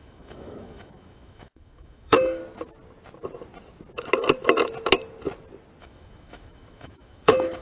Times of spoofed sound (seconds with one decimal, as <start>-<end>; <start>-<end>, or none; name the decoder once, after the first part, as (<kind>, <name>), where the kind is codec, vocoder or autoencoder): 0.0-2.4 (autoencoder, DAC-VAE); 5.8-7.6